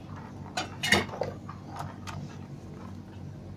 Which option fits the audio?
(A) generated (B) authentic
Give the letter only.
B